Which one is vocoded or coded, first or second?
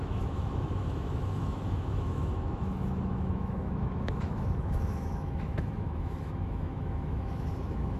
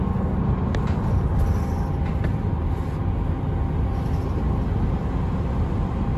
first